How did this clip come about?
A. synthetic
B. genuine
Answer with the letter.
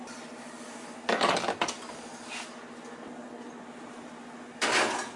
B